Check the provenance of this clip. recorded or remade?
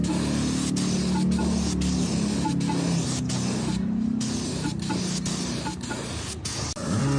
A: recorded